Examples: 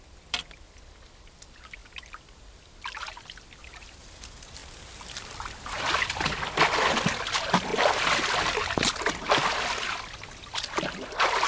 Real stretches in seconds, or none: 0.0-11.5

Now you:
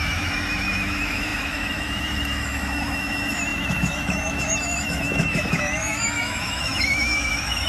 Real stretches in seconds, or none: none